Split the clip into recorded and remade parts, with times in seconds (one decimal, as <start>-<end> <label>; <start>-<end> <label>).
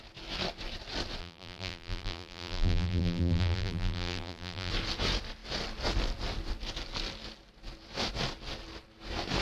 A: 0.0-1.2 recorded; 1.2-4.7 remade; 4.7-9.4 recorded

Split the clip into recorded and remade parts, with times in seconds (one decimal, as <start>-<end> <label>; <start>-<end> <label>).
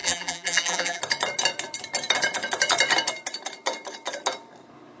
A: 0.0-1.0 remade; 1.0-5.0 recorded